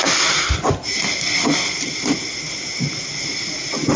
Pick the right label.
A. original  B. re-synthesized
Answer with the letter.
A